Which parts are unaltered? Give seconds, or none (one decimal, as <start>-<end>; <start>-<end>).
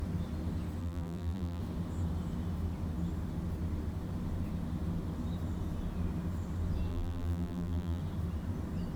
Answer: 0.0-0.8; 1.6-6.9; 8.0-9.0